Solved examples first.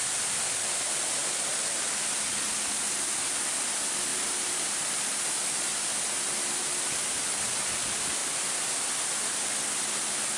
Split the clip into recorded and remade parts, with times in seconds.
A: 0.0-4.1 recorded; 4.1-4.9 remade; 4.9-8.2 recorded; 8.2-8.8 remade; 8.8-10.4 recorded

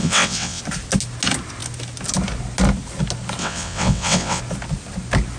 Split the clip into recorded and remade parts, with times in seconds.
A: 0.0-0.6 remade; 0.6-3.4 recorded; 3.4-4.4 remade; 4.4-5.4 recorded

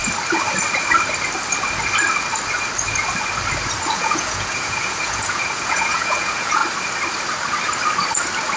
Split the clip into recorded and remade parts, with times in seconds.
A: 0.0-3.9 recorded; 3.9-6.6 remade; 6.6-8.6 recorded